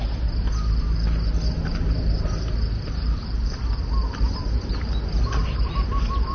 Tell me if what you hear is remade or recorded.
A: recorded